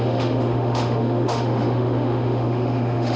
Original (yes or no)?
no